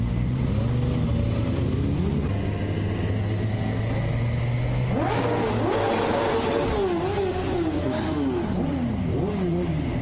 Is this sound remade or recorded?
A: recorded